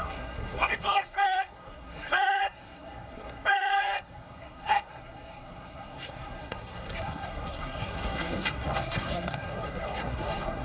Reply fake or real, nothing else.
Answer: fake